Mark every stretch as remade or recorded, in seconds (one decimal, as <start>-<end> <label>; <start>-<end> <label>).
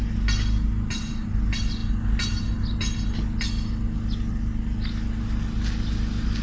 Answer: 0.0-6.4 recorded